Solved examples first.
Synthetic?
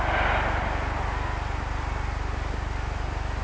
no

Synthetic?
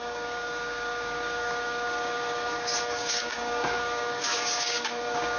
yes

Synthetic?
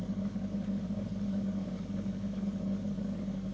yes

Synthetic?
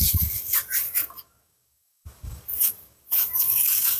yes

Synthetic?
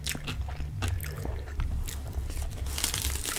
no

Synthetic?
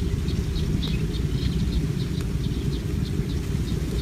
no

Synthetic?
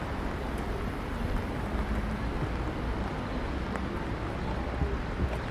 no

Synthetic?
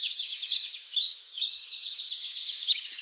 yes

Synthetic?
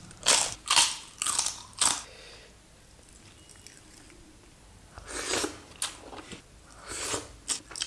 no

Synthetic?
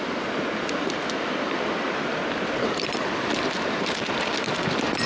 no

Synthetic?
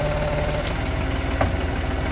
no